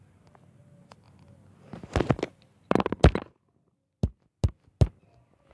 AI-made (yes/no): no